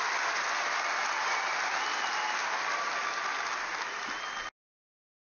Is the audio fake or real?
real